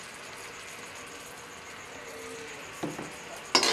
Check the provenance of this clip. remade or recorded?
recorded